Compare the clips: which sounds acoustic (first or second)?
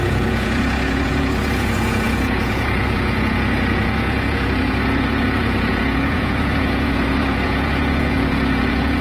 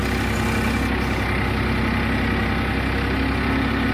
second